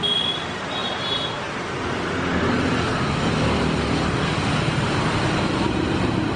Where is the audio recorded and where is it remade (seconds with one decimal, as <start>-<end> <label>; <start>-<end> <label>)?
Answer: 0.0-6.4 recorded